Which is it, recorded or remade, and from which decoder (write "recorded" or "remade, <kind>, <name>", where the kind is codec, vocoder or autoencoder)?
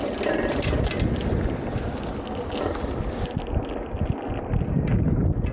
recorded